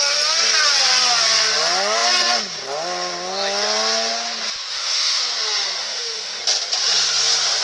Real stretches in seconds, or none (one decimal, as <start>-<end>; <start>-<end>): 0.0-4.7; 5.2-5.8; 6.4-7.6